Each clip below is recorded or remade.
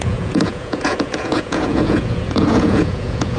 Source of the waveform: remade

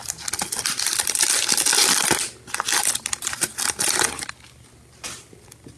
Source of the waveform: recorded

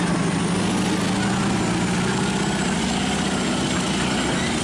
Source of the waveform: recorded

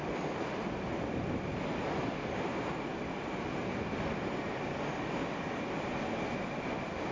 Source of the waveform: recorded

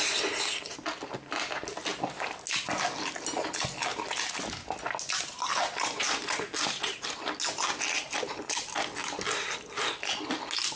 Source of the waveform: recorded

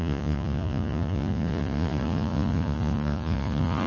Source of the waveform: remade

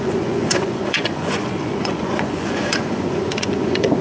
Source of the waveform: remade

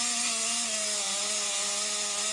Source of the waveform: recorded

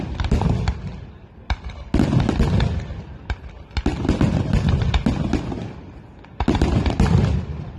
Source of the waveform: recorded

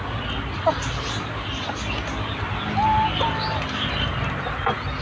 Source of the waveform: recorded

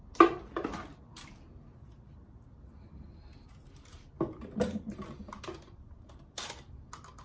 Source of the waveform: recorded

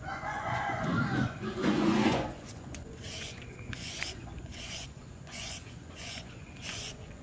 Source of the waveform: remade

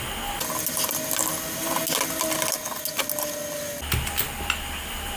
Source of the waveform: recorded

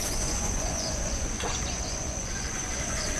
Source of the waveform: remade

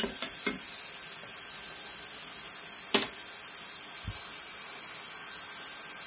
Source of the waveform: recorded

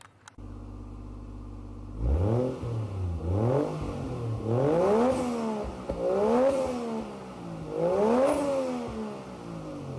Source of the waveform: recorded